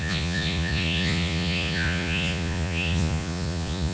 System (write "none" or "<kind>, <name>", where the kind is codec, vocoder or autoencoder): vocoder, Vocos